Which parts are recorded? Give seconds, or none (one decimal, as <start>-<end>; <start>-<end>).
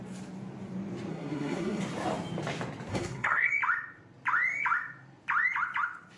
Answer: 0.0-1.1; 1.8-2.9; 3.5-6.2